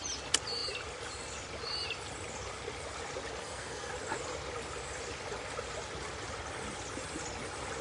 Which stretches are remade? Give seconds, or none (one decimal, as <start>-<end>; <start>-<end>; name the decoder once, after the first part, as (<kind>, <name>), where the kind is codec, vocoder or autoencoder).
3.4-3.9 (codec, SNAC)